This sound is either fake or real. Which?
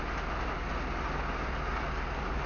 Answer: real